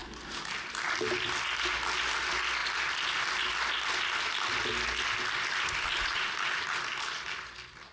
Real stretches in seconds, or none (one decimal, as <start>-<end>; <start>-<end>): 0.0-7.9